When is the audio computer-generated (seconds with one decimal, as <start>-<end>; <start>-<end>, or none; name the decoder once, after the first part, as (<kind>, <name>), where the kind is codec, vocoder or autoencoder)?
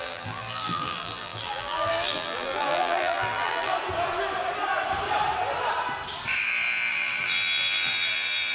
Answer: 0.0-3.7 (vocoder, BigVGAN v2); 6.9-8.5